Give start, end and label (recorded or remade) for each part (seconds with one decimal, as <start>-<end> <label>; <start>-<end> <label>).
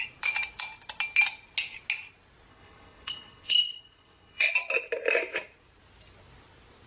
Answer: 0.0-2.5 recorded; 2.5-4.5 remade; 4.5-6.9 recorded